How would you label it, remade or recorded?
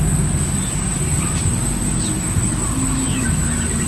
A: recorded